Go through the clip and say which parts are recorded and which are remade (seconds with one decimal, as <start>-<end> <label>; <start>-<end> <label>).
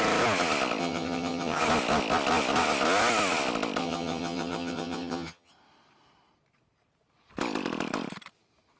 0.0-0.8 recorded; 0.8-1.6 remade; 1.6-3.8 recorded; 3.8-5.5 remade; 5.5-8.8 recorded